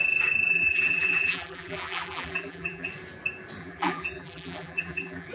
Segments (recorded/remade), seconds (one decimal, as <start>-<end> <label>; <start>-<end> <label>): 0.0-0.5 recorded; 0.5-2.9 remade; 2.9-3.6 recorded; 3.6-5.3 remade